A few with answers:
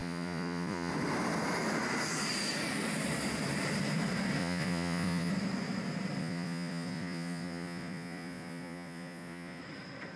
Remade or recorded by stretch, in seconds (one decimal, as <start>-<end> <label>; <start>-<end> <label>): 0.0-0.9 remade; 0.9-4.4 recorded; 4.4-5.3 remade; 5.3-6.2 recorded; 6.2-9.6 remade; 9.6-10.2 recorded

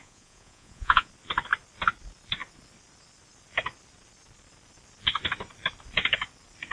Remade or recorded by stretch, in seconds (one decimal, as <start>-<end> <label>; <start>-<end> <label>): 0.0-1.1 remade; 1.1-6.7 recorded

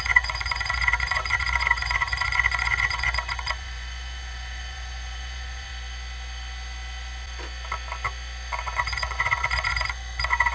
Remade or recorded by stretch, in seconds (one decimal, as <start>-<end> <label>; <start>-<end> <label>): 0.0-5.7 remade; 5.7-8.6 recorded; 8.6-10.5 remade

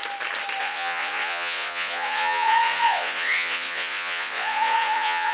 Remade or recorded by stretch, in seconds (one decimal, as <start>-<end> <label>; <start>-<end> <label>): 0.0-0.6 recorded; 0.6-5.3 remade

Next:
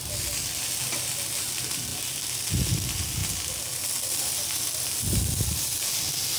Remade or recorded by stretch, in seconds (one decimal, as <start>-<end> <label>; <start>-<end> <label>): 0.0-6.4 recorded

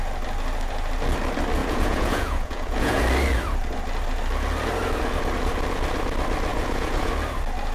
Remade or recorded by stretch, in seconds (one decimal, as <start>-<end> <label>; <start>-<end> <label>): 0.0-1.6 recorded; 1.6-3.0 remade; 3.0-6.5 recorded; 6.5-7.1 remade; 7.1-7.7 recorded

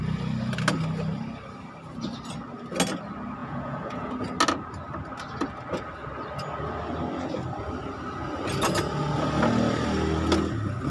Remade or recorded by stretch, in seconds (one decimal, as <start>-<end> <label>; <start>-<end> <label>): 0.0-3.4 recorded; 3.4-4.1 remade; 4.1-10.9 recorded

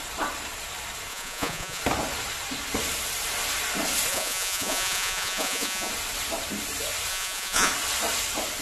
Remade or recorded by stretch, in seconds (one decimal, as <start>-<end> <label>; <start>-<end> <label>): 0.0-1.1 recorded; 1.1-1.8 remade; 1.8-4.1 recorded; 4.1-5.9 remade; 5.9-7.1 recorded; 7.1-7.7 remade; 7.7-8.6 recorded